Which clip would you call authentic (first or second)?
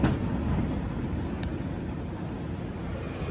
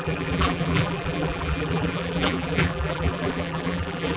first